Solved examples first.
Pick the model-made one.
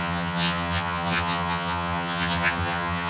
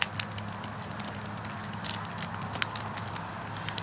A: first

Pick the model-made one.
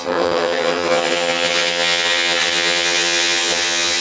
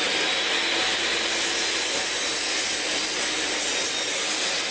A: first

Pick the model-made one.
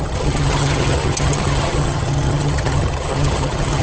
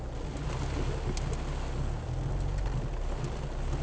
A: first